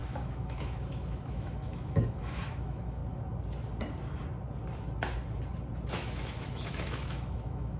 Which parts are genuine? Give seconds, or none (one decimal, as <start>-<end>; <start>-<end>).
3.0-5.9